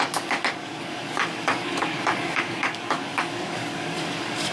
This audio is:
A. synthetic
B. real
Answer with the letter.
A